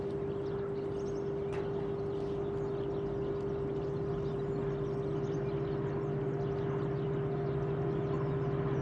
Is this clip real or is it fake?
real